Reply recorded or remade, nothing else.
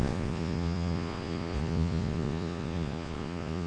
remade